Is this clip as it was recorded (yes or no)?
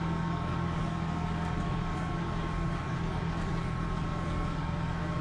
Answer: no